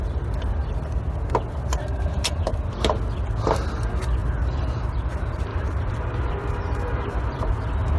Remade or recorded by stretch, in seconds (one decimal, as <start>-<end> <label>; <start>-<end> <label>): 0.0-4.2 recorded; 4.2-4.8 remade; 4.8-5.5 recorded; 5.5-7.5 remade; 7.5-8.0 recorded